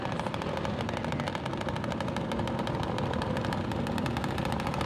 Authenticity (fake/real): fake